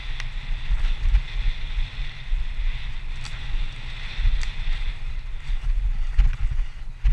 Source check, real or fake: real